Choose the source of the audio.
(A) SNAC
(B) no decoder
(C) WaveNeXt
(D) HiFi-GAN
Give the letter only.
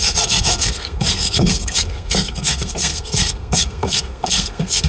A